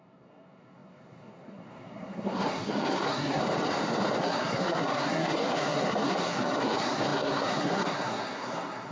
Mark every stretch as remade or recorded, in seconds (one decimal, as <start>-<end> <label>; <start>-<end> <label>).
0.0-3.4 remade; 3.4-4.2 recorded; 4.2-8.9 remade